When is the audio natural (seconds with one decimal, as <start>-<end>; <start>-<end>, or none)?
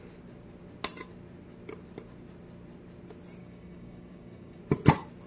0.0-3.4; 4.6-5.3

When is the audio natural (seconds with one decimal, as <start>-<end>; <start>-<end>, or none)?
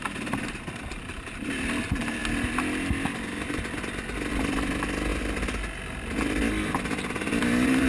0.0-7.9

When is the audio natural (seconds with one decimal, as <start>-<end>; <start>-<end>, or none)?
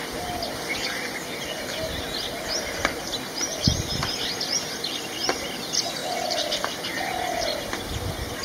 0.0-6.0; 7.6-8.4